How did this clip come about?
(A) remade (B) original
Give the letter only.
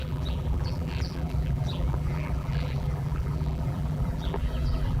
A